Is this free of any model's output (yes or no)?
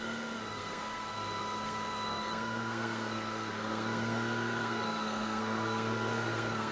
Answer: no